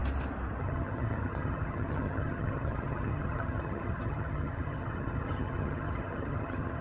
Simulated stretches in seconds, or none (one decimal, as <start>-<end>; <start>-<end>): 0.6-6.8